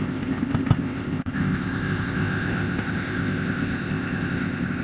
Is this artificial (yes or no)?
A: yes